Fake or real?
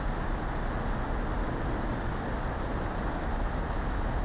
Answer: real